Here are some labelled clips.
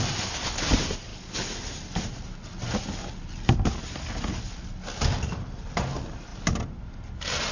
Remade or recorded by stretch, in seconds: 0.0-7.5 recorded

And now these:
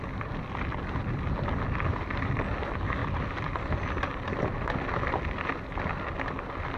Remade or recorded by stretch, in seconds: 0.0-6.8 recorded

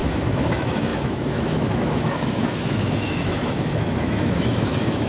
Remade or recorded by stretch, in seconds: 0.0-5.1 remade

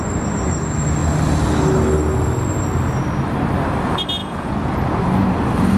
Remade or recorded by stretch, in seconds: 0.0-4.2 recorded; 4.2-4.7 remade; 4.7-5.8 recorded

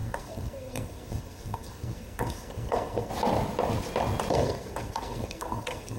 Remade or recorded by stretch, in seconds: 0.0-3.1 remade; 3.1-4.3 recorded; 4.3-6.0 remade

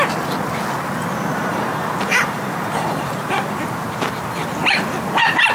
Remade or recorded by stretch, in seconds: 0.0-1.4 recorded; 1.4-3.4 remade; 3.4-5.5 recorded